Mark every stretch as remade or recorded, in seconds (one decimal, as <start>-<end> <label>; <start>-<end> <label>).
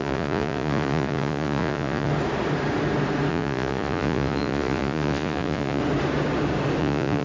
0.0-2.1 remade; 2.1-3.3 recorded; 3.3-5.8 remade; 5.8-6.8 recorded; 6.8-7.2 remade